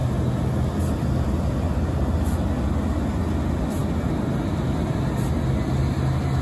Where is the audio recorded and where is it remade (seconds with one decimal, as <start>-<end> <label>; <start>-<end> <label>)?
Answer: 0.0-6.4 recorded